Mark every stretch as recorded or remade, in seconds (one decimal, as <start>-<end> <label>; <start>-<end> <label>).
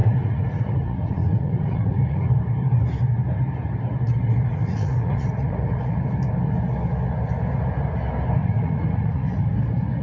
0.0-2.3 remade; 2.3-4.5 recorded; 4.5-6.0 remade; 6.0-8.4 recorded; 8.4-9.5 remade; 9.5-10.0 recorded